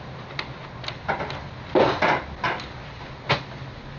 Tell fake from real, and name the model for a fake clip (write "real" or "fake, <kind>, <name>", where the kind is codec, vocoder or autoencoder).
real